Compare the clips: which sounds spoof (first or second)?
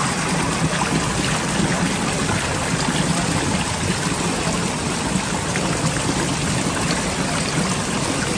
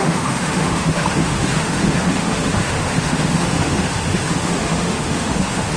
second